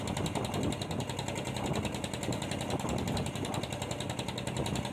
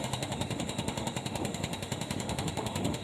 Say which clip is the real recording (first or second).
first